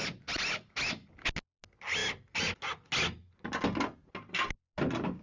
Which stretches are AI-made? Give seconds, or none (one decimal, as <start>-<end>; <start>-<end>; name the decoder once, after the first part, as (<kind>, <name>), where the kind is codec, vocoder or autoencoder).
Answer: none